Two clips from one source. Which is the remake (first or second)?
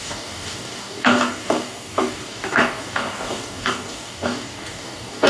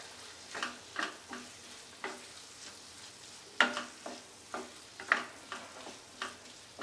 first